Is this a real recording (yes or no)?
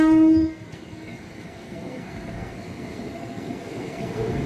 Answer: no